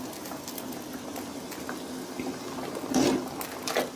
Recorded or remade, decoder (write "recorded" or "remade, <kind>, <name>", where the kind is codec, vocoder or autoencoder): recorded